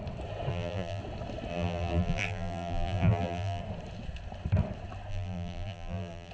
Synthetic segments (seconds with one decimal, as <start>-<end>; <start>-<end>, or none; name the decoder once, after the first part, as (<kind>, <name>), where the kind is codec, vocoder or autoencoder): 0.5-1.0 (vocoder, BigVGAN v2); 1.5-3.6; 5.1-6.3